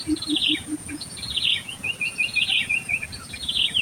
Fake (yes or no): yes